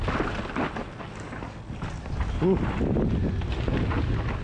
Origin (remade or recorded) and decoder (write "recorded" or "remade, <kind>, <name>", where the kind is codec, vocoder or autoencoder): recorded